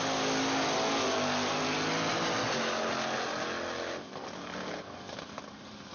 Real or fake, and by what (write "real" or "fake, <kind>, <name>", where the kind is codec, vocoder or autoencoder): real